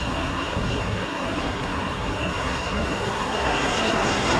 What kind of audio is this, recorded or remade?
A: remade